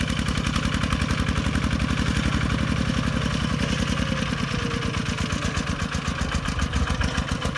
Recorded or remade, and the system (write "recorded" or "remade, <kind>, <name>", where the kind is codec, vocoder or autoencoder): recorded